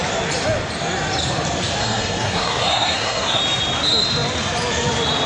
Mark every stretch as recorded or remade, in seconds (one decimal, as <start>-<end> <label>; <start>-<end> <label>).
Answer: 0.0-1.8 recorded; 1.8-3.4 remade; 3.4-5.3 recorded